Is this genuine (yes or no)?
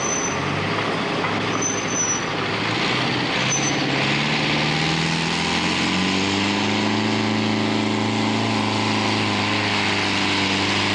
yes